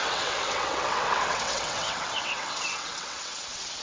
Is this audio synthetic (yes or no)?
yes